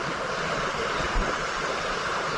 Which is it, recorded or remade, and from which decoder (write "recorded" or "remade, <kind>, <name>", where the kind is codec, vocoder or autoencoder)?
recorded